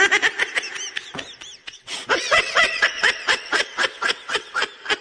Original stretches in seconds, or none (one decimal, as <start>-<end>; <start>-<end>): 0.0-1.6; 4.6-5.0